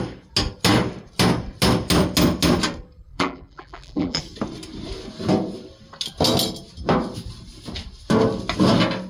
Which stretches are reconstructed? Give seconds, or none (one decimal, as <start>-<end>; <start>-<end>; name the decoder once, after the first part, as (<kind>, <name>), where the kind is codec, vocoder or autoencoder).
3.1-4.2 (vocoder, BigVGAN v2)